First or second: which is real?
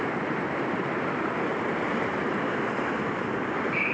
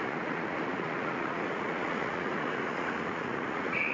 first